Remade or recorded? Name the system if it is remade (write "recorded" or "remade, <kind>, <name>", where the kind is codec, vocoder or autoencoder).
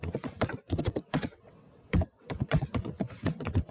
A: remade, vocoder, WaveNeXt